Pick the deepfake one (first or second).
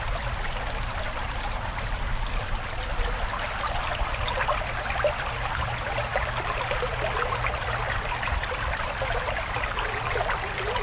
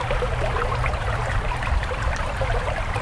second